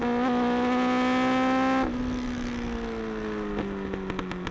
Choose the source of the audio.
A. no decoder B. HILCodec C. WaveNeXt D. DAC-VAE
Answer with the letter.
A